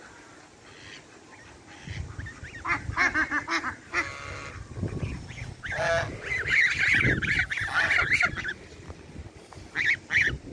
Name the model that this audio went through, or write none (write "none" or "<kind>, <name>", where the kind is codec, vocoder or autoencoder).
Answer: none